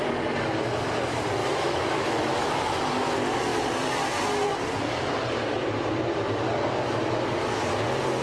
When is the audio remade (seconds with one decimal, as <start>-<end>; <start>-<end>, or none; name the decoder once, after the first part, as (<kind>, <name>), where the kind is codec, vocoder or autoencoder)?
1.4-2.5 (autoencoder, DAC-VAE)